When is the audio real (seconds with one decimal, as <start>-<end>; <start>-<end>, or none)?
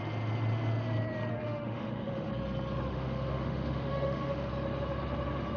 0.0-1.3; 2.3-2.9; 4.5-5.6